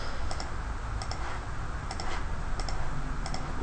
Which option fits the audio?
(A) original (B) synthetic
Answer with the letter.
A